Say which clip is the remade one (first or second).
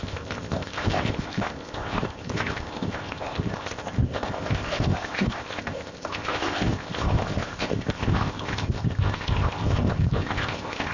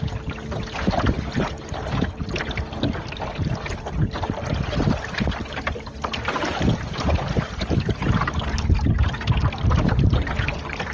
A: first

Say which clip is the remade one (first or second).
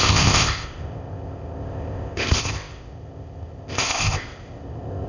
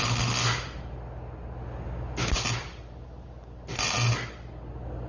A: first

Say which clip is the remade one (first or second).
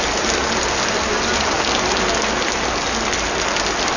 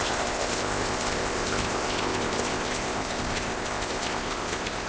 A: second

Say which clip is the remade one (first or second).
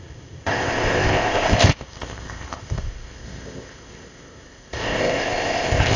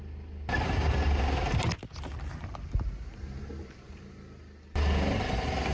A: first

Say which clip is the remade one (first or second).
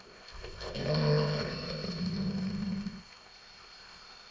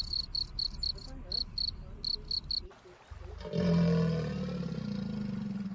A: first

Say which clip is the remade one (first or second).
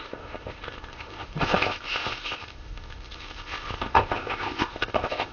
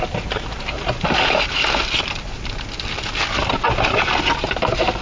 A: first